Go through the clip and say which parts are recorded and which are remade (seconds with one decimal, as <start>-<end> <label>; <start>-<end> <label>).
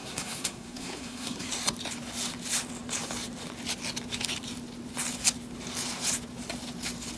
0.0-1.5 remade; 1.5-7.2 recorded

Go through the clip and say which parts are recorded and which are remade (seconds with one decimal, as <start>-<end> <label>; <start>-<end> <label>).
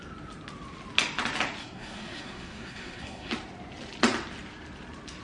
0.0-1.6 recorded; 1.6-3.3 remade; 3.3-5.2 recorded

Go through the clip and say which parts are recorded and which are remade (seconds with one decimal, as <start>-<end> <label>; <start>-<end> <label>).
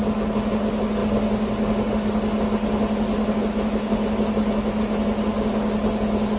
0.0-6.4 recorded